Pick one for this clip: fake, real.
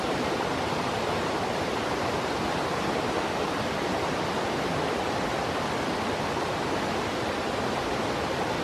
real